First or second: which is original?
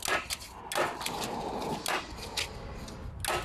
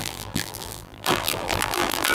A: first